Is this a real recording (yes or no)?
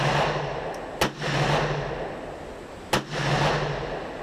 yes